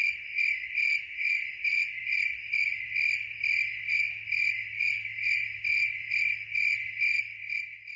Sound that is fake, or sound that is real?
real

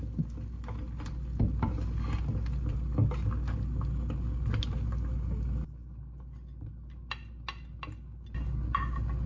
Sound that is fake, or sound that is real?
real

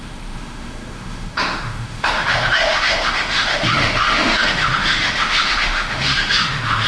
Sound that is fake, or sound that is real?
fake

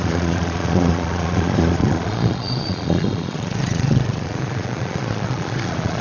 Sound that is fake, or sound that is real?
fake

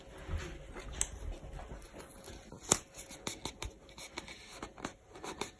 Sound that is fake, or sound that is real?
real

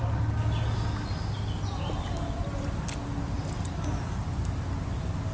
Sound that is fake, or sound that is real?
real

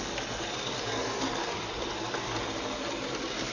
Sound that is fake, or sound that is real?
fake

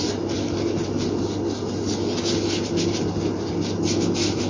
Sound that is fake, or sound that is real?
real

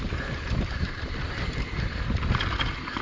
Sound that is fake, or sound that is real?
real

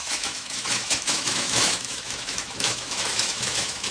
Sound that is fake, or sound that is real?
fake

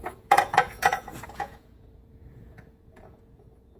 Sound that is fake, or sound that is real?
fake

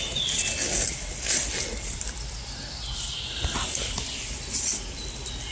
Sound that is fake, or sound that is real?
real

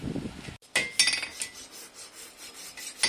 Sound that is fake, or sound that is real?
real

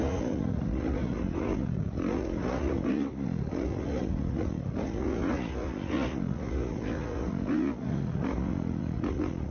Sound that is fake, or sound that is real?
fake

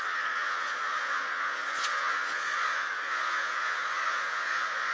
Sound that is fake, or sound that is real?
fake